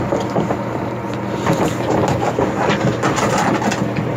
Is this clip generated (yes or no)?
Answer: no